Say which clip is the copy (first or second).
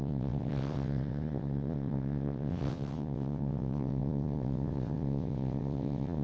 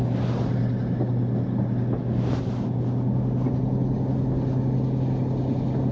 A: first